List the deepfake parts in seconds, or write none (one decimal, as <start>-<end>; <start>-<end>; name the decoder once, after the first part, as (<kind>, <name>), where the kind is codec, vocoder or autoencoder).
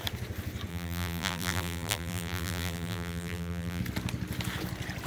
0.7-3.8 (vocoder, BigVGAN v2)